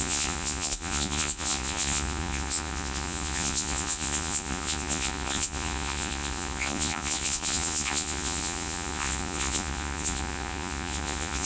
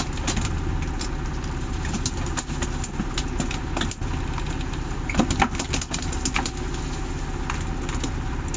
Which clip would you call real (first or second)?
second